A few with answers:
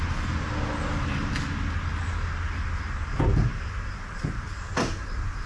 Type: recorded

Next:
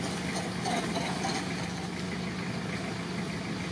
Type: recorded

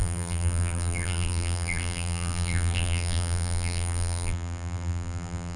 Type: remade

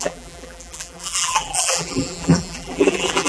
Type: remade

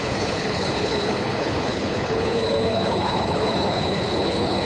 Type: remade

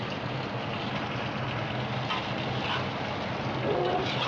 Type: recorded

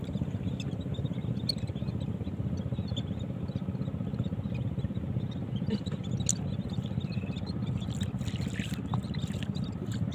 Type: recorded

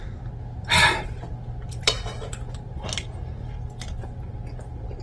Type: recorded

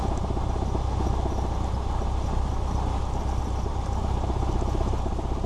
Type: recorded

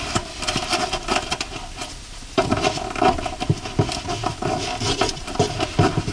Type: recorded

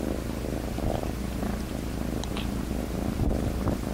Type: recorded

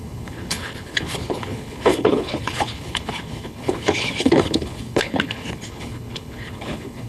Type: remade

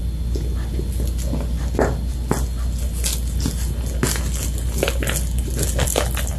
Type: recorded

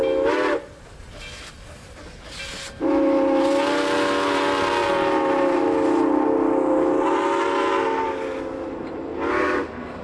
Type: recorded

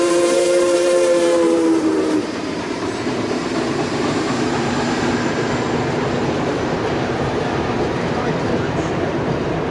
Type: remade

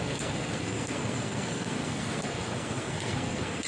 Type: remade